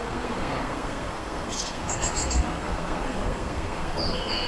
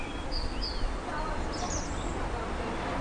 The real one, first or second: second